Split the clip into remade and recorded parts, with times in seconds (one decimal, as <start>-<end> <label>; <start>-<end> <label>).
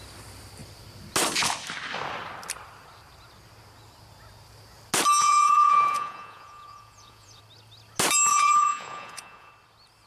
0.0-5.2 recorded; 5.2-7.4 remade; 7.4-8.3 recorded; 8.3-9.5 remade; 9.5-10.1 recorded